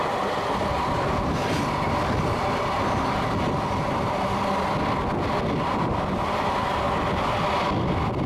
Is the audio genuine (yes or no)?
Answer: yes